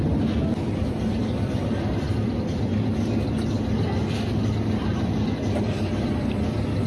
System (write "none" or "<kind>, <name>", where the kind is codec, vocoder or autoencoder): none